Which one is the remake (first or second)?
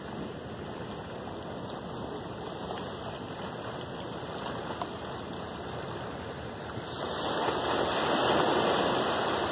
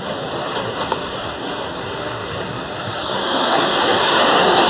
second